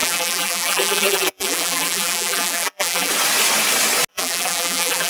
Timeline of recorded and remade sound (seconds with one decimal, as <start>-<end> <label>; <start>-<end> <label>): 0.0-3.1 remade; 3.1-4.1 recorded; 4.1-5.1 remade